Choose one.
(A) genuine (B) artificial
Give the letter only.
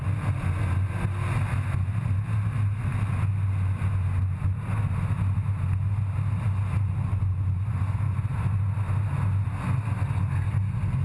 A